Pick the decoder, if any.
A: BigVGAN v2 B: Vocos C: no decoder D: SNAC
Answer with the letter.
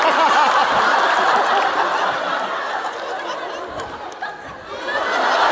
C